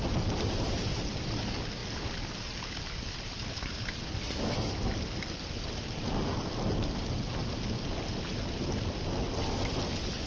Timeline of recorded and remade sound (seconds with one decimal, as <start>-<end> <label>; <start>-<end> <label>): 0.0-10.3 recorded

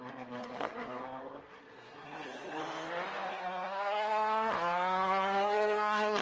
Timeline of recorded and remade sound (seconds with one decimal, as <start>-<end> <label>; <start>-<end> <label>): 0.0-2.6 remade; 2.6-3.3 recorded; 3.3-6.2 remade

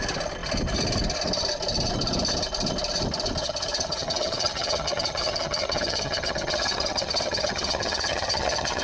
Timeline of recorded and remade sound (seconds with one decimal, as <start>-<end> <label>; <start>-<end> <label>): 0.0-3.4 recorded; 3.4-8.8 remade

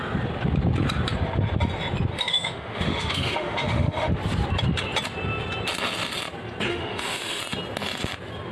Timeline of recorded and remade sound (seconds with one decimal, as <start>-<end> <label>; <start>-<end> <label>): 0.0-2.1 recorded; 2.1-4.1 remade; 4.1-6.7 recorded; 6.7-7.4 remade; 7.4-8.5 recorded

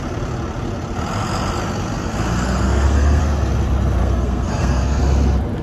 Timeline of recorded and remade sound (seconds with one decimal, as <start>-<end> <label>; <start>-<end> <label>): 0.0-2.4 recorded; 2.4-3.2 remade; 3.2-4.0 recorded; 4.0-5.0 remade; 5.0-5.6 recorded